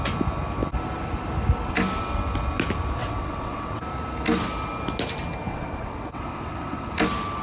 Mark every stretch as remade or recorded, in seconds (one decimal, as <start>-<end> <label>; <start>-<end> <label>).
0.0-3.0 recorded; 3.0-3.8 remade; 3.8-5.5 recorded; 5.5-6.9 remade; 6.9-7.4 recorded